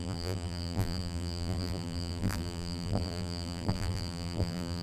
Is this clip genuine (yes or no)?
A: no